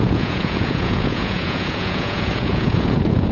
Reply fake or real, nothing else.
fake